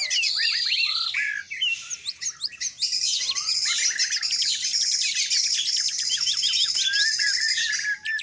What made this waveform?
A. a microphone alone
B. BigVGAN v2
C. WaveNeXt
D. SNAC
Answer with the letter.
A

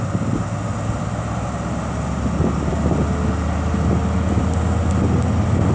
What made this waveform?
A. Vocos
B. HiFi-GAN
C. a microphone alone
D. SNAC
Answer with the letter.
C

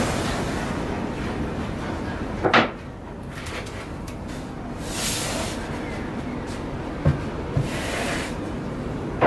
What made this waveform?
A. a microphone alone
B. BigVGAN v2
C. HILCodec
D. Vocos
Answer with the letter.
A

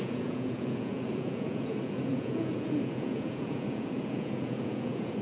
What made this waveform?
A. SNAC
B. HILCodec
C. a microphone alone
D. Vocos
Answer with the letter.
D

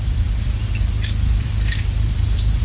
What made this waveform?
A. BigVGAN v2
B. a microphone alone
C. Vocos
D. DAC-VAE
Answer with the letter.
A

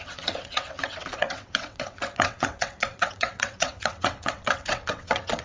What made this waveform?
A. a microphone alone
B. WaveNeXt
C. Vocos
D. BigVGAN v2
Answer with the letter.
B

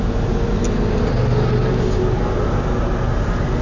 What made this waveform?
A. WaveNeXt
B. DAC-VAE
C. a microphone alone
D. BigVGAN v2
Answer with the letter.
C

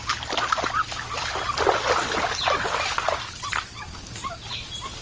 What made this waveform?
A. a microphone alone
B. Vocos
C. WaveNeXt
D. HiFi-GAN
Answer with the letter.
A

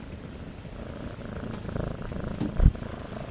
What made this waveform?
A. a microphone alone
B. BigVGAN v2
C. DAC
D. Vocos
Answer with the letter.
A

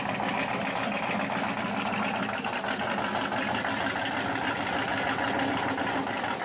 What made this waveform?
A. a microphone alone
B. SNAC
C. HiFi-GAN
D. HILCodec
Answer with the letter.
A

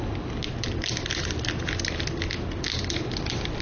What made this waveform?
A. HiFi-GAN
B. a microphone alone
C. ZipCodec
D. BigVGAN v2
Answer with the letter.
B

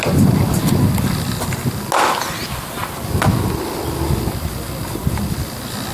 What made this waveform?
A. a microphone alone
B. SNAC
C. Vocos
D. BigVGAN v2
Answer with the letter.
A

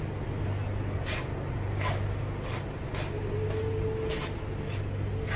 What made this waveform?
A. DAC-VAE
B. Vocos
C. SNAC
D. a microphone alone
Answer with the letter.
D